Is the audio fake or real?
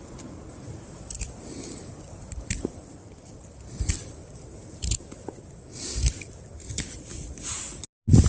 real